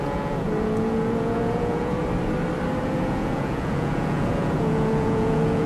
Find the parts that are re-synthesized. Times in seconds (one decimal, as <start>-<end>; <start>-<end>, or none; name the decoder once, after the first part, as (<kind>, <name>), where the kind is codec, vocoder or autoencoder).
0.0-2.0 (vocoder, Vocos); 2.8-5.7